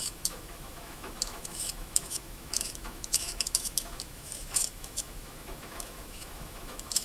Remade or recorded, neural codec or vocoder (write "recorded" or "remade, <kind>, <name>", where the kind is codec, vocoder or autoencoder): remade, autoencoder, DAC-VAE